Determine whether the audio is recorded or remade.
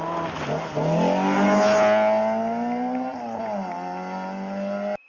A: recorded